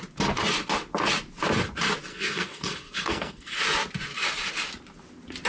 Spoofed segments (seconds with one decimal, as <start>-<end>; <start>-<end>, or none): 2.1-3.6